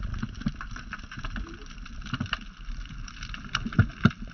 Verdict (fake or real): real